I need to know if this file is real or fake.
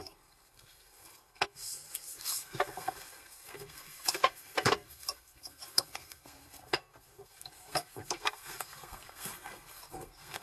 fake